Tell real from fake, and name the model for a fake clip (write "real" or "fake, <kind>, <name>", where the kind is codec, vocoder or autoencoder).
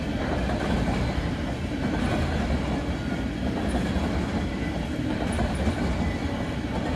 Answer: real